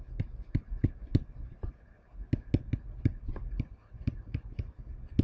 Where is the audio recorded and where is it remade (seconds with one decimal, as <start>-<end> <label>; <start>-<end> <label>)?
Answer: 0.0-3.8 recorded; 3.8-4.7 remade; 4.7-5.2 recorded